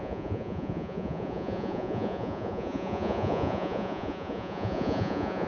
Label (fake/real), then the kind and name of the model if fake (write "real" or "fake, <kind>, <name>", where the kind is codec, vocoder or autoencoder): fake, vocoder, Vocos